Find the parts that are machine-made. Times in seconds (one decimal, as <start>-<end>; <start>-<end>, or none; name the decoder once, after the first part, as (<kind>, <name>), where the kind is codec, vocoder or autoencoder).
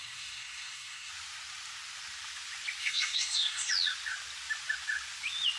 0.0-1.1 (codec, SNAC); 2.8-3.7